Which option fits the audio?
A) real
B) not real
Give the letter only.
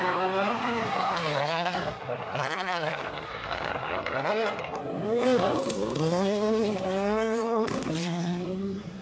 B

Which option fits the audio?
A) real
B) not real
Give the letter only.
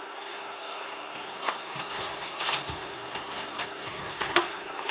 B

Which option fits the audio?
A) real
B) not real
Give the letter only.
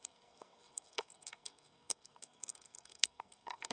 B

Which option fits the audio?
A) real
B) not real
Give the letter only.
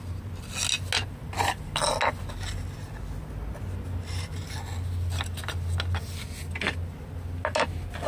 A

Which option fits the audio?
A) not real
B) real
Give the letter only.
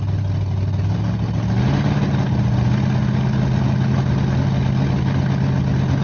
B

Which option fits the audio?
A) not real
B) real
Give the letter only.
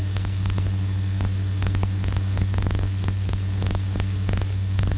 A